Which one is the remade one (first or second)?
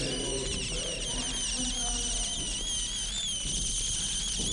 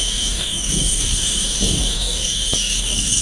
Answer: second